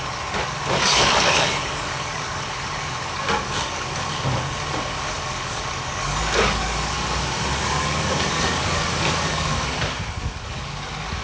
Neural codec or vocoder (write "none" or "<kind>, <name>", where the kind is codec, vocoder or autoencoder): codec, DAC